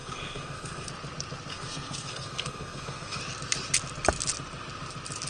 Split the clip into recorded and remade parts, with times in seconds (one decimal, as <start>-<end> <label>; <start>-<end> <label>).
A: 0.0-0.9 remade; 0.9-1.5 recorded; 1.5-3.2 remade; 3.2-5.3 recorded